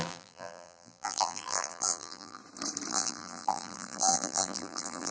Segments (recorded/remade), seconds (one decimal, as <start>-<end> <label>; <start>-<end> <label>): 0.0-2.4 remade; 2.4-2.9 recorded; 2.9-5.1 remade